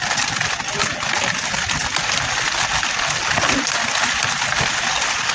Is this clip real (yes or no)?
yes